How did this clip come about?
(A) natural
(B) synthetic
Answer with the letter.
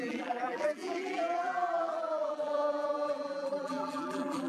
B